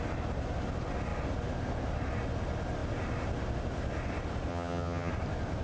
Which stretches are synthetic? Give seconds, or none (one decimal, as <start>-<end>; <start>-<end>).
4.5-5.1